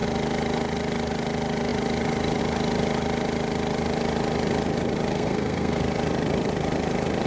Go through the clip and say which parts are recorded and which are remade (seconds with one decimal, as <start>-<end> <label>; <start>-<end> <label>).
0.0-5.1 recorded; 5.1-5.8 remade; 5.8-7.3 recorded